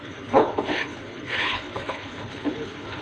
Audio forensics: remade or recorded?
remade